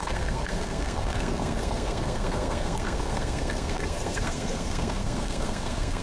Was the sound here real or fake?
fake